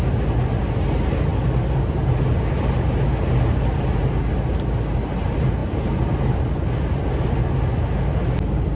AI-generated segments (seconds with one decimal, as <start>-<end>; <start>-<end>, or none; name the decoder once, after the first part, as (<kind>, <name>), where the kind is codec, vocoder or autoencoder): none